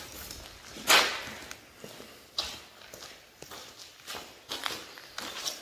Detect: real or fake real